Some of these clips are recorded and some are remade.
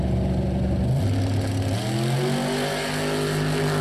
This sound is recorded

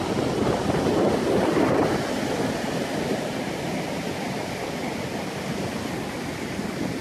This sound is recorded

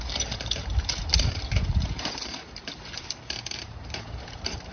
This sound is remade